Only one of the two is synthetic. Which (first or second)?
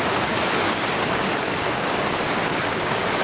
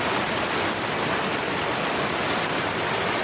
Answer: first